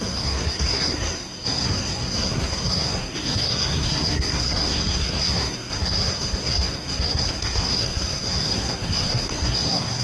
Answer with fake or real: fake